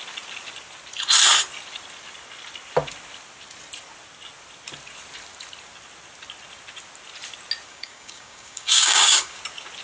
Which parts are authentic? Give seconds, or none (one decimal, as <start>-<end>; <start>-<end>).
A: 0.0-7.7; 9.4-9.8